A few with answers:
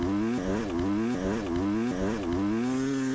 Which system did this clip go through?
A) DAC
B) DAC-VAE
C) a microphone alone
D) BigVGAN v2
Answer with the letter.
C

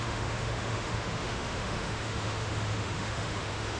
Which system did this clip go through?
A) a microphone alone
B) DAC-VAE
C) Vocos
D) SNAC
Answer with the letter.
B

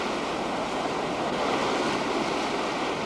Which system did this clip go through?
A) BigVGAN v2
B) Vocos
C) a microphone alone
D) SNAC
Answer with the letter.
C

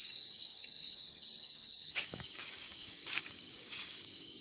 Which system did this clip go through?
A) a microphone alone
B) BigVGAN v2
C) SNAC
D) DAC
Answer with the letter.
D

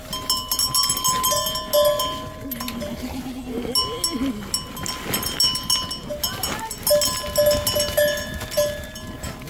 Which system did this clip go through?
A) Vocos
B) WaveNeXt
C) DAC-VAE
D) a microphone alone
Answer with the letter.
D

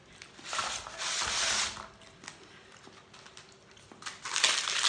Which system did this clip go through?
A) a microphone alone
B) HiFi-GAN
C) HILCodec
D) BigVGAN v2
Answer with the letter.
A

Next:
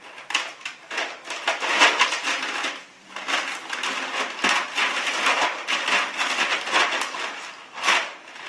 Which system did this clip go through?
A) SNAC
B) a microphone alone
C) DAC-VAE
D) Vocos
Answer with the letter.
B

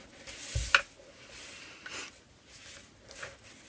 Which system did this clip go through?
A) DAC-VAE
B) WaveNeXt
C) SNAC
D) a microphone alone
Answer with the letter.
D